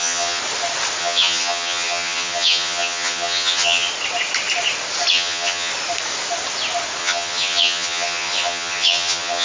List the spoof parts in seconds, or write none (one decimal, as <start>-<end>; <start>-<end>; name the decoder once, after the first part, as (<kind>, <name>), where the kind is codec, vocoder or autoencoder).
0.0-0.4 (vocoder, HiFi-GAN); 1.0-3.9; 5.1-5.7; 7.0-9.4